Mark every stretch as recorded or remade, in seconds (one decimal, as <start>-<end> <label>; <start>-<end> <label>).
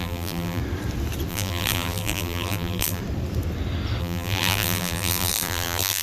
0.0-0.6 remade; 0.6-1.3 recorded; 1.3-3.0 remade; 3.0-4.0 recorded; 4.0-6.0 remade